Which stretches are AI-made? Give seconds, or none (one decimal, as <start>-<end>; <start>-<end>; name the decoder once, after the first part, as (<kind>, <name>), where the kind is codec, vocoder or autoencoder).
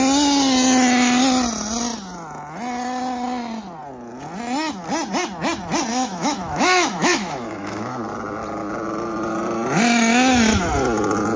5.9-8.0 (autoencoder, DAC-VAE)